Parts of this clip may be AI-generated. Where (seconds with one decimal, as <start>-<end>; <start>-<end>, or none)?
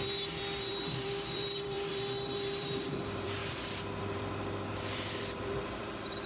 0.0-6.3